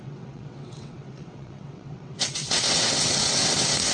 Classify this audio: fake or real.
fake